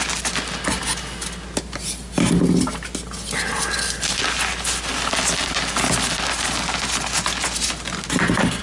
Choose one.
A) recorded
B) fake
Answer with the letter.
A